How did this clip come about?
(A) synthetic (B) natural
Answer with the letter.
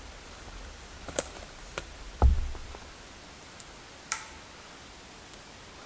B